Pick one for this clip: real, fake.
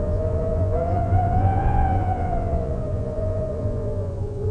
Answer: fake